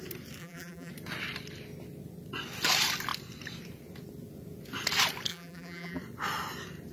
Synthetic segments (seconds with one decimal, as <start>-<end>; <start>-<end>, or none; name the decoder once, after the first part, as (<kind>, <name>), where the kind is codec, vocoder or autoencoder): 0.4-0.9 (vocoder, BigVGAN v2); 5.3-6.0